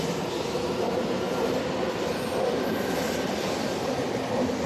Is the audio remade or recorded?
recorded